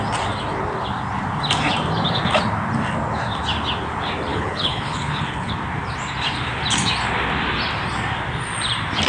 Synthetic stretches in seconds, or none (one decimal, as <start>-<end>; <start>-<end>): 4.3-5.5